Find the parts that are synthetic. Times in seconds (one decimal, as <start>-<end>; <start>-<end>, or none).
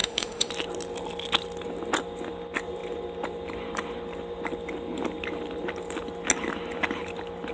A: 0.0-0.5